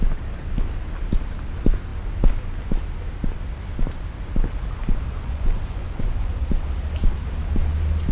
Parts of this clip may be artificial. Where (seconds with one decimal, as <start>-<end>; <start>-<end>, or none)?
5.1-6.4

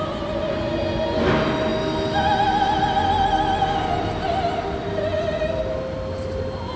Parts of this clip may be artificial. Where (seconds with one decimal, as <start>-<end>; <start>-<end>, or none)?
none